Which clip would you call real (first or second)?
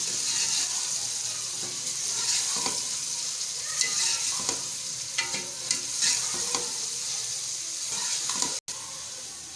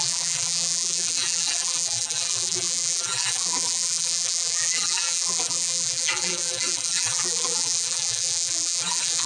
first